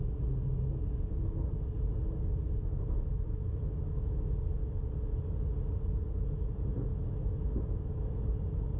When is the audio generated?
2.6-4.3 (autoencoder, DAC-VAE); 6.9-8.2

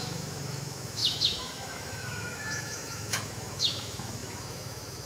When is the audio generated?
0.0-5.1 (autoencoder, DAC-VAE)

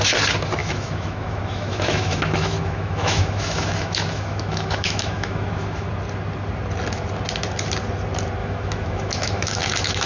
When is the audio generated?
0.6-5.9 (autoencoder, DAC-VAE); 8.4-10.1